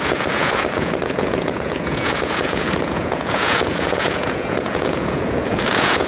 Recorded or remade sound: remade